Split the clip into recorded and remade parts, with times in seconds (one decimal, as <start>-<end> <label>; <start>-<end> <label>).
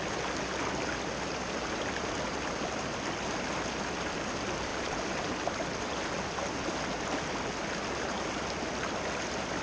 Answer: 0.0-9.6 recorded